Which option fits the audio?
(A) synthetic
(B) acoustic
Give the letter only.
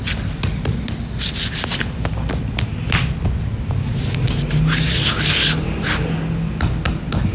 B